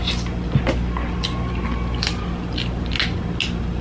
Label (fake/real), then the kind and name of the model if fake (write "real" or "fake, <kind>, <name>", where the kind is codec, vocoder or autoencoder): real